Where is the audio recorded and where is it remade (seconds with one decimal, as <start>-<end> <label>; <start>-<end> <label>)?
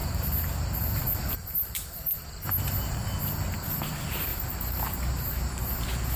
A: 0.0-2.2 remade; 2.2-4.3 recorded; 4.3-5.6 remade; 5.6-6.2 recorded